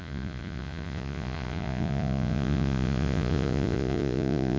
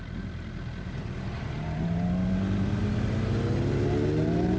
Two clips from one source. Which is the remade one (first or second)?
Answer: first